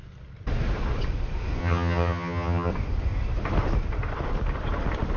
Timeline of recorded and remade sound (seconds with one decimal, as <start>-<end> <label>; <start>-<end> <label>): 0.0-1.6 recorded; 1.6-2.7 remade; 2.7-5.2 recorded